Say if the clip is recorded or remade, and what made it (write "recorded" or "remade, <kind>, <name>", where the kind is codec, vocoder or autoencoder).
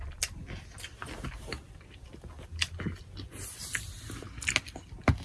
recorded